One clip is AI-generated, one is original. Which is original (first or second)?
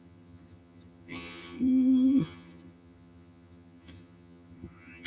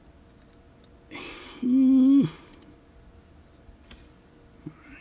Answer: second